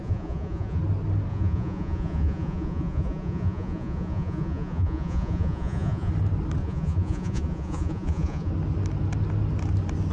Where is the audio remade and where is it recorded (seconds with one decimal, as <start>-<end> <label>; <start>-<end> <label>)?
0.0-0.8 remade; 0.8-1.3 recorded; 1.3-6.1 remade; 6.1-6.6 recorded; 6.6-8.5 remade; 8.5-10.1 recorded